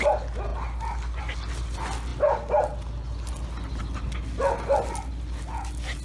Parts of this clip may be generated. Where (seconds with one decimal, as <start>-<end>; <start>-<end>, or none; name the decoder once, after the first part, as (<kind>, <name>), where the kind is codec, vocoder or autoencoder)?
none